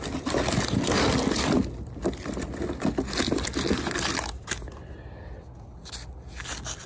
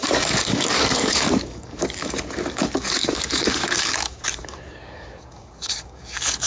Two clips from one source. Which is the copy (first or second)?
second